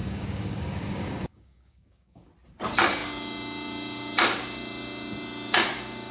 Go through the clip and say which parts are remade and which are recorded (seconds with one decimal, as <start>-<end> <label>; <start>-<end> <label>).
0.0-2.3 remade; 2.3-6.1 recorded